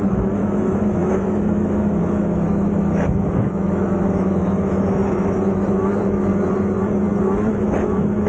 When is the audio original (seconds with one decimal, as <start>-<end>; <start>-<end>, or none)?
6.3-7.2